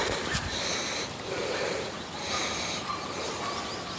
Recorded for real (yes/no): yes